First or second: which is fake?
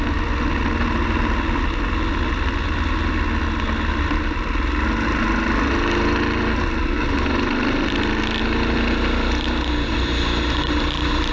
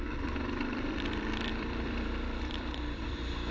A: second